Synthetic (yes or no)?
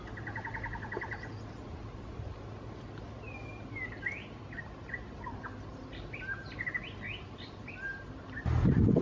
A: no